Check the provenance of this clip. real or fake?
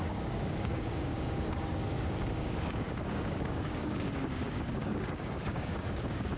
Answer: fake